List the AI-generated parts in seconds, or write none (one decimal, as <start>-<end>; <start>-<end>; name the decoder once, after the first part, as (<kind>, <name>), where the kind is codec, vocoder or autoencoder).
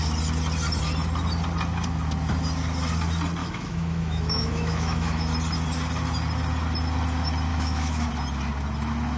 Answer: 3.4-5.3 (autoencoder, DAC-VAE); 7.5-8.1